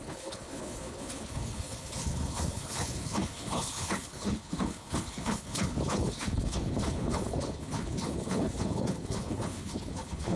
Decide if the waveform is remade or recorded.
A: remade